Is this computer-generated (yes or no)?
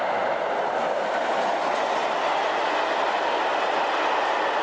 no